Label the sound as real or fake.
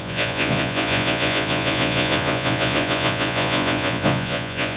fake